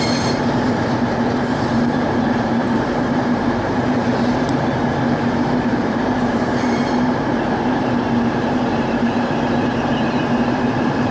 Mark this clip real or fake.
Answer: fake